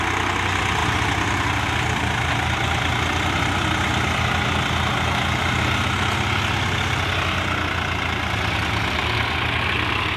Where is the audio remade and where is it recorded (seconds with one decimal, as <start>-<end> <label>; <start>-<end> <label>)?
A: 0.0-10.2 recorded